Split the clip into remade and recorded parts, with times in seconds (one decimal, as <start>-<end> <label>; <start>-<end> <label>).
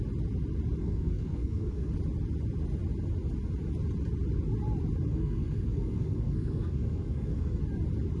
0.0-0.8 recorded; 0.8-1.9 remade; 1.9-5.1 recorded; 5.1-7.6 remade; 7.6-8.2 recorded